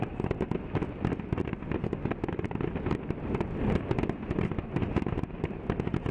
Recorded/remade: recorded